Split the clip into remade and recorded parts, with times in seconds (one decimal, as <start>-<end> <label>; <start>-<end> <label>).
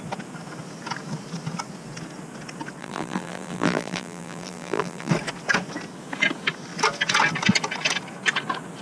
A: 0.0-2.8 recorded; 2.8-5.1 remade; 5.1-8.8 recorded